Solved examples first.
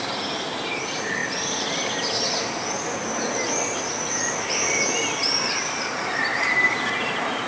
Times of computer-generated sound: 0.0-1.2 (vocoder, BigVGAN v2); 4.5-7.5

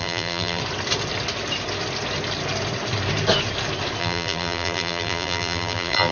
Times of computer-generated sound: 0.0-0.6 (vocoder, BigVGAN v2); 4.0-6.1

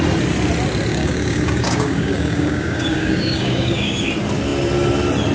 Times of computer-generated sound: 0.9-4.1 (codec, DAC)

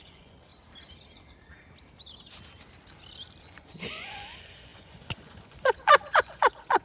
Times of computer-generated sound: 0.0-0.5 (vocoder, Vocos); 3.4-6.8

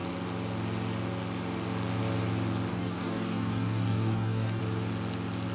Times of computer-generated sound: 2.7-4.6 (codec, DAC)

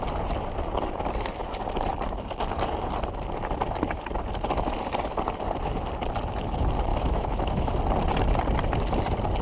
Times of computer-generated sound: 6.9-7.7 (autoencoder, DAC-VAE)

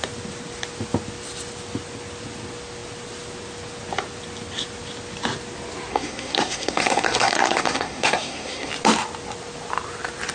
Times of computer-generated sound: 5.9-8.7 (codec, SNAC)